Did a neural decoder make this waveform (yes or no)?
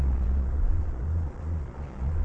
yes